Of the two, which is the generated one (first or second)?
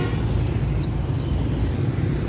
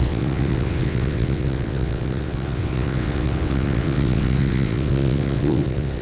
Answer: second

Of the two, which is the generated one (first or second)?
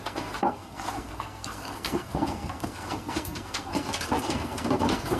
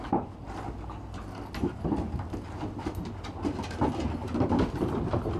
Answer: first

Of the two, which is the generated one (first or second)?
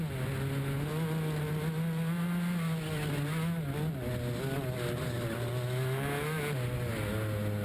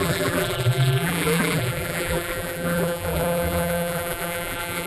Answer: second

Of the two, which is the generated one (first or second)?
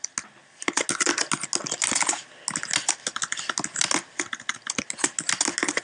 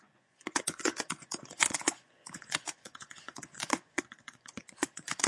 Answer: second